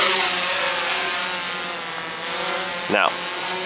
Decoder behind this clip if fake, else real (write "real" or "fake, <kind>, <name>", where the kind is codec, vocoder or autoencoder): real